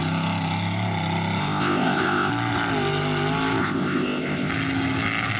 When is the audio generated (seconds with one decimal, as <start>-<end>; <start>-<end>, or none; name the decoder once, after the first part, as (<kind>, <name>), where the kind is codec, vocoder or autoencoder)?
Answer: 1.4-2.3 (codec, ZipCodec); 3.6-4.5